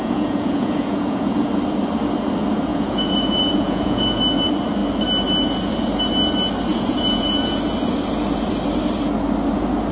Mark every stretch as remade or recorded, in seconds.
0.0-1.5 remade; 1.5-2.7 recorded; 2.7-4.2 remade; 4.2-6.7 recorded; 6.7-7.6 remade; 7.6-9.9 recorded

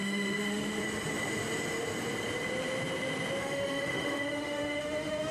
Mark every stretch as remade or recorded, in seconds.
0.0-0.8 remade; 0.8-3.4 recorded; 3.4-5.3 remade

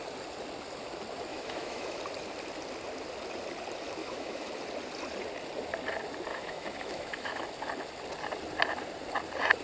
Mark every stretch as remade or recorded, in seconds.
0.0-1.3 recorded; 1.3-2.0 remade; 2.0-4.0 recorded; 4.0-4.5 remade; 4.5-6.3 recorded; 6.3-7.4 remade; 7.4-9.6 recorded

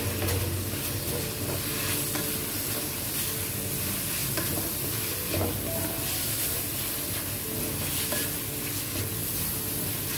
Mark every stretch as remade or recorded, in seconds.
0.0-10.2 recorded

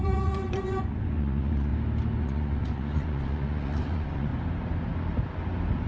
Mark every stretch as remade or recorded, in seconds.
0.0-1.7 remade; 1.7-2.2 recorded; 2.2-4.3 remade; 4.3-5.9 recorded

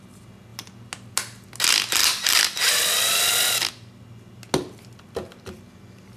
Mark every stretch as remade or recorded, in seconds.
0.0-6.2 recorded